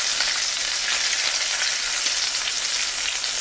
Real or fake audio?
real